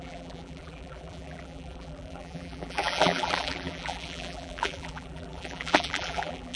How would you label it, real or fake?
fake